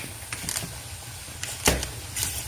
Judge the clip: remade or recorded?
recorded